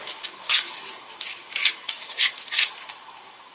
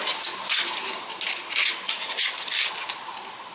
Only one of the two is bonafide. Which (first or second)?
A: second